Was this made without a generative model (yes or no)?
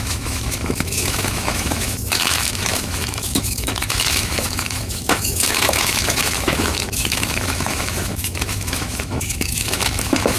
no